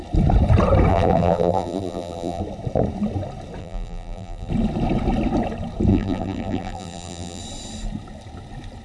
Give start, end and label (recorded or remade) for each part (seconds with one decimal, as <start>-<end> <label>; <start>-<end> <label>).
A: 0.0-0.9 recorded; 0.9-2.4 remade; 2.4-3.6 recorded; 3.6-4.5 remade; 4.5-5.9 recorded; 5.9-7.4 remade; 7.4-8.8 recorded